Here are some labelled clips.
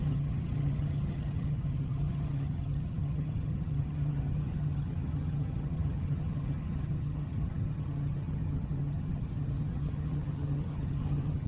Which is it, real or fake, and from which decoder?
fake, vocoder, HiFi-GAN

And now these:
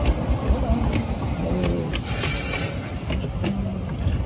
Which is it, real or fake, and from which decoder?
real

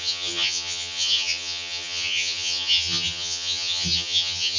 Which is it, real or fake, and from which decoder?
fake, vocoder, HiFi-GAN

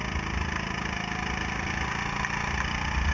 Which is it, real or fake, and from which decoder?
real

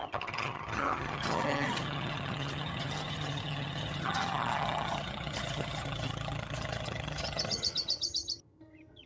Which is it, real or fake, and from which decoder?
fake, vocoder, HiFi-GAN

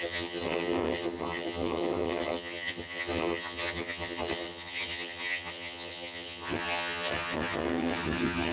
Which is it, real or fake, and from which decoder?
fake, vocoder, HiFi-GAN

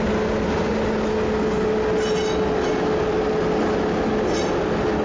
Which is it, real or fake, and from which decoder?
real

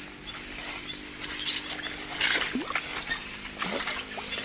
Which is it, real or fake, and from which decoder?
real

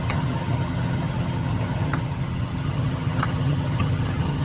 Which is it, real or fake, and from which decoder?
fake, vocoder, HiFi-GAN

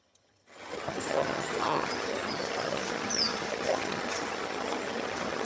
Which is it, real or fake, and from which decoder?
fake, vocoder, HiFi-GAN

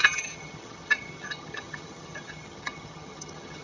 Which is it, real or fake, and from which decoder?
fake, vocoder, HiFi-GAN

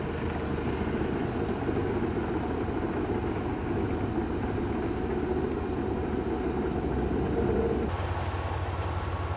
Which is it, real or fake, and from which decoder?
real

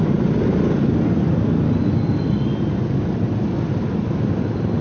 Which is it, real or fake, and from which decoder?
real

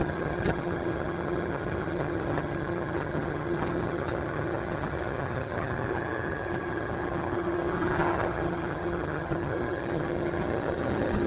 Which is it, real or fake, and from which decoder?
fake, vocoder, HiFi-GAN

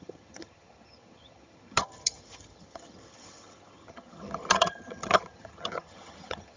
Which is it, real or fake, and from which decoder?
fake, vocoder, HiFi-GAN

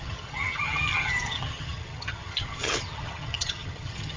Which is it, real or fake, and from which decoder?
fake, vocoder, HiFi-GAN